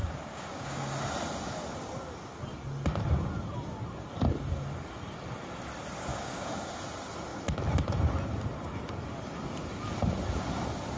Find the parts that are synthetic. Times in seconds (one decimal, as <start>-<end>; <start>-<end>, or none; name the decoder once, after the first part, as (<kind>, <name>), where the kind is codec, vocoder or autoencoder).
0.0-0.9 (codec, DAC); 6.1-6.7